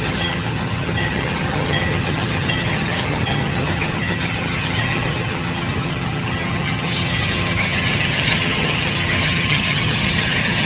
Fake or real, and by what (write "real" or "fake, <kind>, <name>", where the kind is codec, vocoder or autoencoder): fake, vocoder, HiFi-GAN